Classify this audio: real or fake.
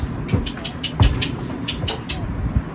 real